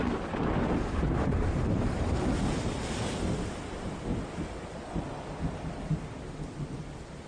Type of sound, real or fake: real